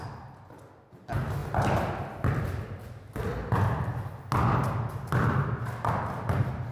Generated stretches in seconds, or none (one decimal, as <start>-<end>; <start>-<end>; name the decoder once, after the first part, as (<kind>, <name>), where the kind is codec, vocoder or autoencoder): none